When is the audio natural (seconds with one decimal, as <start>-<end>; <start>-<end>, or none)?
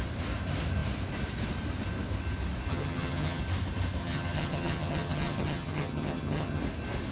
0.0-2.7; 3.4-4.0; 6.6-7.1